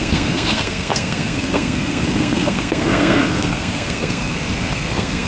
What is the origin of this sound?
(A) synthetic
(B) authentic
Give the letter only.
A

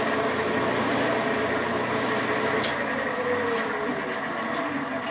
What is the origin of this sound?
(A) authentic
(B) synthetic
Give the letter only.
A